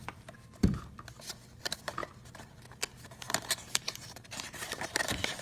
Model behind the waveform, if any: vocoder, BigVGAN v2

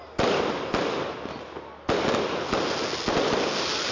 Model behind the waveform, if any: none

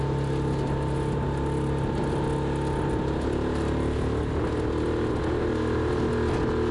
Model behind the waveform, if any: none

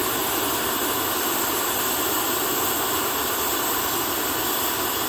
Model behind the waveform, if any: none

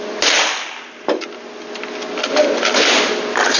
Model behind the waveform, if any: none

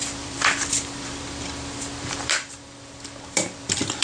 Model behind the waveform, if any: vocoder, BigVGAN v2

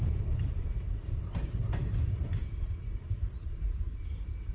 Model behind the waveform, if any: vocoder, BigVGAN v2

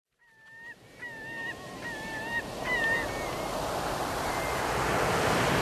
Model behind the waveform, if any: none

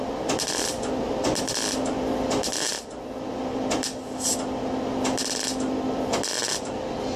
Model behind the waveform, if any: none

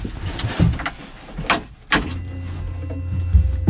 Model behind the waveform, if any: none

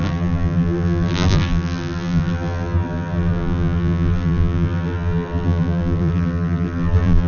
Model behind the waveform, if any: vocoder, BigVGAN v2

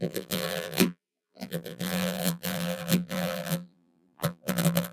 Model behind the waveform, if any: vocoder, BigVGAN v2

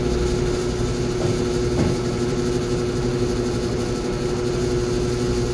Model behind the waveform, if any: none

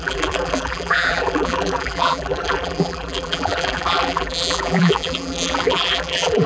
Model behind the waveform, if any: vocoder, BigVGAN v2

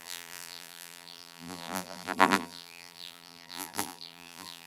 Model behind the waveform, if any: vocoder, BigVGAN v2